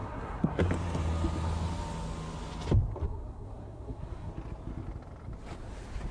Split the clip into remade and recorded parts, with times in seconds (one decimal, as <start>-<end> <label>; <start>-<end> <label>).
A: 0.0-0.7 remade; 0.7-3.0 recorded; 3.0-4.3 remade; 4.3-6.1 recorded